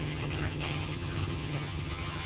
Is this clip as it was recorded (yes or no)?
no